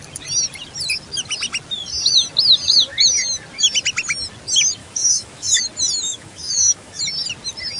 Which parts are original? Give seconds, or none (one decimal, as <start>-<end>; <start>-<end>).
0.0-4.8; 5.6-6.1; 7.0-7.8